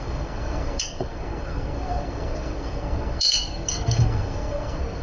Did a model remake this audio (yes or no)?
yes